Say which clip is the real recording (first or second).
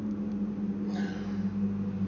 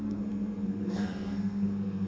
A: first